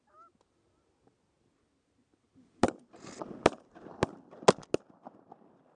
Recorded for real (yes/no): yes